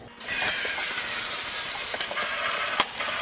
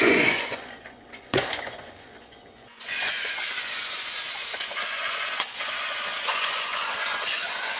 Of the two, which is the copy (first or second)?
second